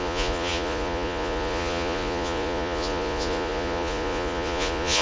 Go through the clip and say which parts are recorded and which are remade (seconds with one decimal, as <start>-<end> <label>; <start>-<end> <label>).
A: 0.0-5.0 remade